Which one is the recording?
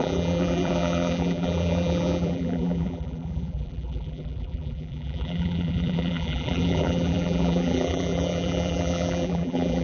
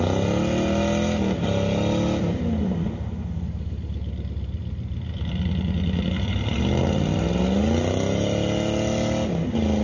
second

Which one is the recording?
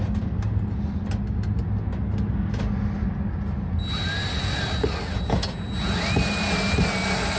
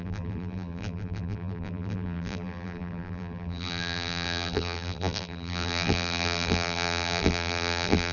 first